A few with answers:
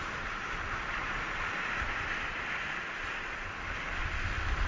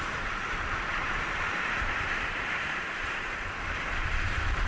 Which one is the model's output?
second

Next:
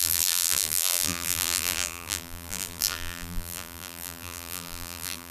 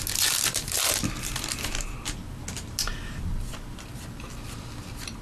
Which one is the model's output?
first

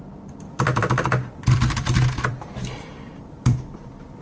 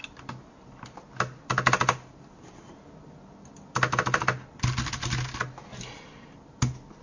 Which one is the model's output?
first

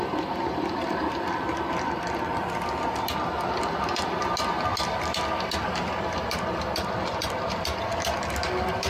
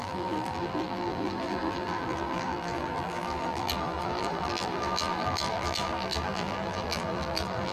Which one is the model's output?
second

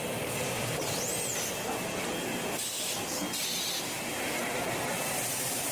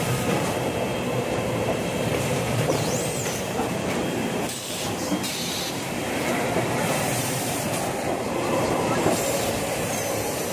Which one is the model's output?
second